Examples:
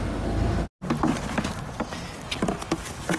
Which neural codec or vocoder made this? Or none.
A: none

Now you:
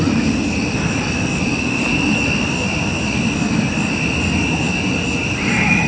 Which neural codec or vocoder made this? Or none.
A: none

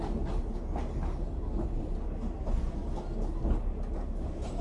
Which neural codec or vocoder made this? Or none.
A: none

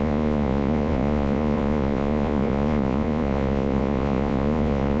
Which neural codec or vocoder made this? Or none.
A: vocoder, Vocos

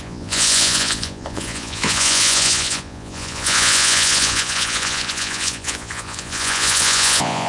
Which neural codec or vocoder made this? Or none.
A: vocoder, Vocos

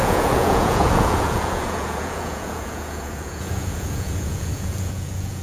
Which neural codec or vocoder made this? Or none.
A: vocoder, Vocos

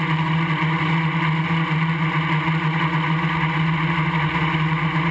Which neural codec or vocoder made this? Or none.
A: none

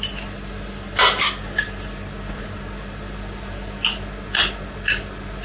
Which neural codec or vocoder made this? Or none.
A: none